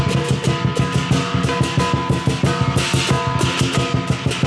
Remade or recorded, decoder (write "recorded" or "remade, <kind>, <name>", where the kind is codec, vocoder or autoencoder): recorded